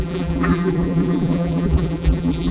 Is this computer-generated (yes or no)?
yes